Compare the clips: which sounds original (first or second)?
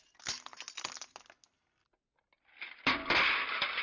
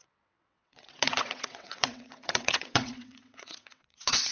first